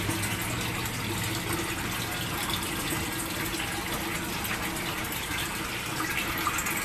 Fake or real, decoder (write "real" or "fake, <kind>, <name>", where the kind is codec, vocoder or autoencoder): real